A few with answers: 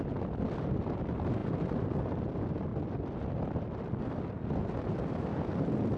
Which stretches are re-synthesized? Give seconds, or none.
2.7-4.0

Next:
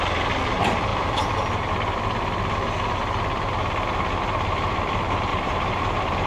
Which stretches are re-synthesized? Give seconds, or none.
5.3-6.3

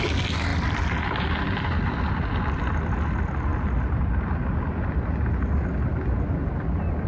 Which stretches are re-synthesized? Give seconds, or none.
0.5-2.6

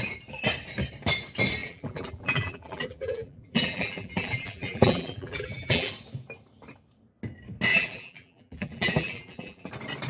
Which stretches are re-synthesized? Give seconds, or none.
1.6-5.9; 7.7-9.7

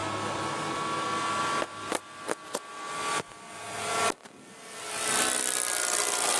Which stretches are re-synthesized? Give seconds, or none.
none